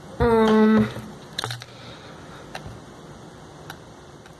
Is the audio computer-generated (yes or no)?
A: yes